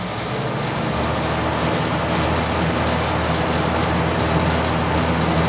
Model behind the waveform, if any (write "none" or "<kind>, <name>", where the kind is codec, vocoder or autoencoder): none